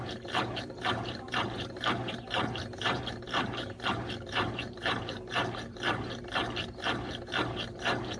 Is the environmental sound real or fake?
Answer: fake